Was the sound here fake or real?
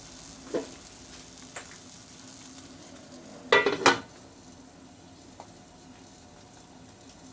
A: real